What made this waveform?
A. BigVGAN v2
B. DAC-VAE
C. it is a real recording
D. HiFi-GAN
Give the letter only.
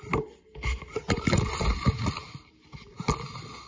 C